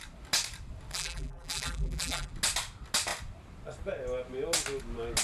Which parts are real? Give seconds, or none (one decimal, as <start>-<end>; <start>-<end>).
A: 0.0-0.9; 2.3-5.2